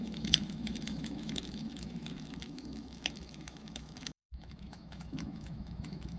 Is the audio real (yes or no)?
no